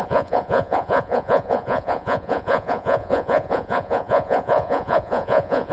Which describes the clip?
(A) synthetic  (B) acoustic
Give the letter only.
A